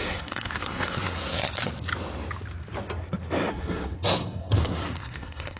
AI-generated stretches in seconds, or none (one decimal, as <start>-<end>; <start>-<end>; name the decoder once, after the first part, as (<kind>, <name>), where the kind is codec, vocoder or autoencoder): 0.0-1.9 (codec, SNAC); 3.5-5.6

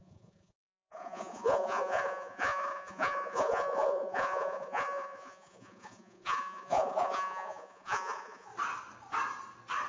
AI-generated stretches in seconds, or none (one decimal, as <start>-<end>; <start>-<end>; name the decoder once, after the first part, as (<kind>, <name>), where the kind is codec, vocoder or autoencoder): 0.0-8.5 (vocoder, Vocos)

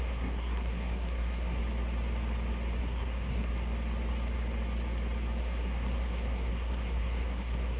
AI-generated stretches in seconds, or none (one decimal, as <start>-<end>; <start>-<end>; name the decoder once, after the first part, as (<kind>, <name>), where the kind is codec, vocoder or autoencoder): 0.0-1.6 (codec, SNAC); 2.8-3.5; 5.4-7.8